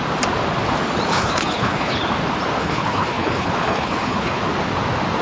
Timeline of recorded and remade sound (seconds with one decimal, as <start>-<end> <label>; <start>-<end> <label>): 0.0-1.1 recorded; 1.1-2.0 remade; 2.0-2.6 recorded; 2.6-4.4 remade; 4.4-5.2 recorded